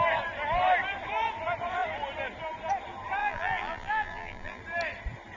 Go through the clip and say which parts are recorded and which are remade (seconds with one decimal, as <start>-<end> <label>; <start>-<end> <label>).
0.0-3.2 recorded; 3.2-4.6 remade; 4.6-5.4 recorded

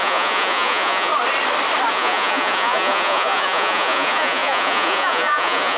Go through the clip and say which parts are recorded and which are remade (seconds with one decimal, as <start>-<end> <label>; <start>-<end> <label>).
0.0-1.1 remade; 1.1-1.9 recorded; 1.9-5.8 remade

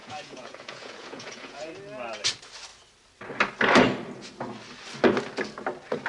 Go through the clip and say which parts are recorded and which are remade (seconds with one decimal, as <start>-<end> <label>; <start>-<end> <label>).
0.0-1.7 remade; 1.7-6.1 recorded